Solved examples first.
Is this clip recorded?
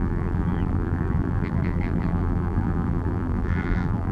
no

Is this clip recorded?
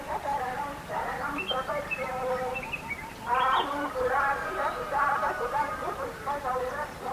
no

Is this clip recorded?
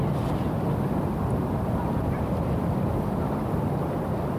no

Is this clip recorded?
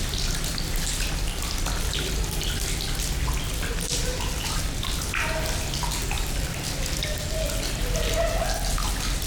yes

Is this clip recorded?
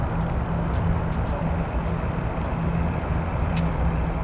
yes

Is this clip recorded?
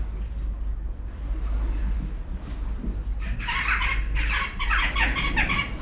yes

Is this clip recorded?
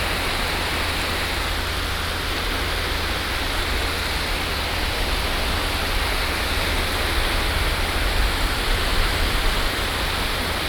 yes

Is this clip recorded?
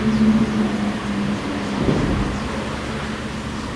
yes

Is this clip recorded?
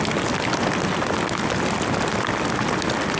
yes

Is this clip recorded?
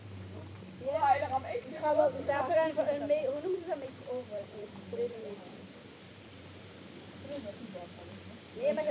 no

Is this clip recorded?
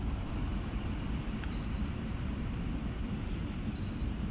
no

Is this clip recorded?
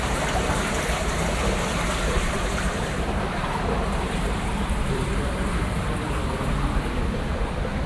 no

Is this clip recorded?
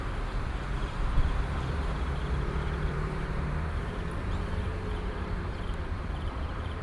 no